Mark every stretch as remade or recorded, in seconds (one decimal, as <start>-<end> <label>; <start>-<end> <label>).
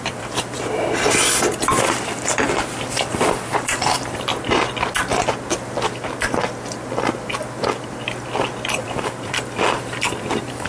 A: 0.0-4.3 remade; 4.3-8.7 recorded; 8.7-10.7 remade